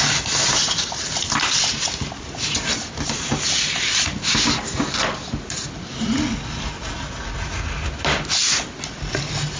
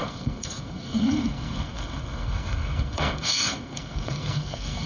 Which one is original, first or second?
first